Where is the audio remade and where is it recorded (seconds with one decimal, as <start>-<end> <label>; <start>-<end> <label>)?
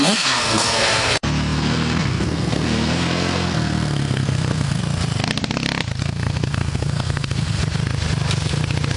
0.0-4.8 remade; 4.8-6.0 recorded; 6.0-7.6 remade; 7.6-9.0 recorded